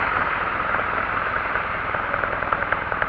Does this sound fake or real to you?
fake